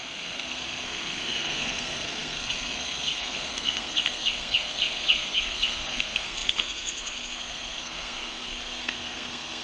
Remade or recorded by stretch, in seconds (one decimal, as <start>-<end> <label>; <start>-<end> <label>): 0.0-9.6 remade